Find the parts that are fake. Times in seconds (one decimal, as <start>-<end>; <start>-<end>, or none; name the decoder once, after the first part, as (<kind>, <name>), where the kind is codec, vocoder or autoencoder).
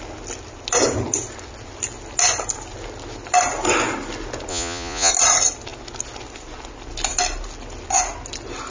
4.5-5.1 (vocoder, Vocos)